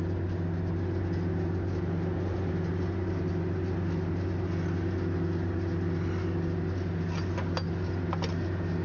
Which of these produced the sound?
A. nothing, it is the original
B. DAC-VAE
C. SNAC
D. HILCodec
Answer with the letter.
A